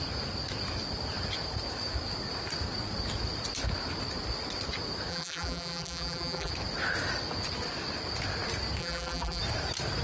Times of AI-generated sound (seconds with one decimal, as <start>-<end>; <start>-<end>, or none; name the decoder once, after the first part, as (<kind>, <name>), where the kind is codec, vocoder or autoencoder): 5.1-6.5 (vocoder, BigVGAN v2); 8.8-9.4